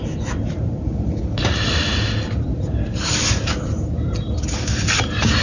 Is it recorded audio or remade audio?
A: remade